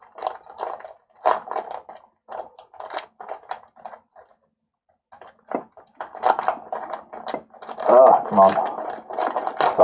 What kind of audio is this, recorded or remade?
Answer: recorded